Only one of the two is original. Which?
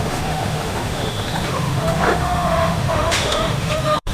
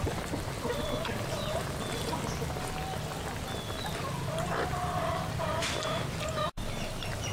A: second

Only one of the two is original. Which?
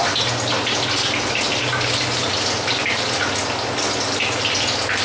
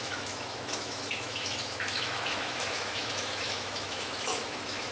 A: first